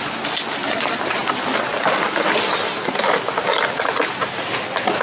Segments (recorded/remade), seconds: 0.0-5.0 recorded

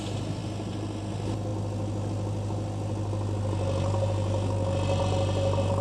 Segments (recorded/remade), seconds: 0.0-5.8 recorded

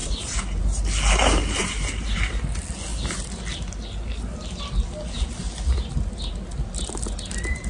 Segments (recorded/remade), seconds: 0.0-0.6 remade; 0.6-1.2 recorded; 1.2-2.4 remade; 2.4-7.7 recorded

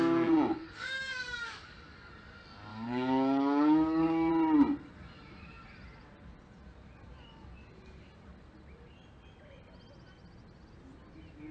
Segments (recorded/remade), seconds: 0.0-0.5 recorded; 0.5-2.1 remade; 2.1-2.7 recorded; 2.7-4.3 remade; 4.3-11.5 recorded

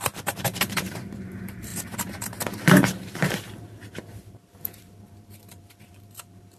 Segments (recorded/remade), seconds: 0.0-6.6 remade

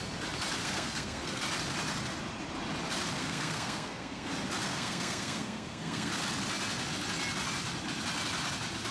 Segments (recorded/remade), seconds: 0.0-0.6 recorded; 0.6-1.4 remade; 1.4-3.2 recorded; 3.2-4.3 remade; 4.3-4.7 recorded; 4.7-6.1 remade; 6.1-8.9 recorded

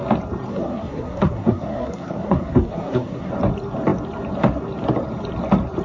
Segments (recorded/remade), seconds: 0.0-0.5 recorded; 0.5-3.3 remade; 3.3-5.8 recorded